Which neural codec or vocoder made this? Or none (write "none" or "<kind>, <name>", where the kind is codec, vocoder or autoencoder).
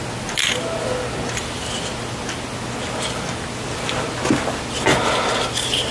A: none